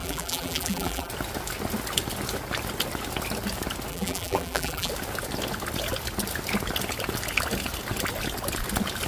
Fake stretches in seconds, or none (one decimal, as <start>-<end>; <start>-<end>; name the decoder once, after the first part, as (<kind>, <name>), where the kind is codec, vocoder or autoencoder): 0.0-1.1 (vocoder, BigVGAN v2); 3.9-4.9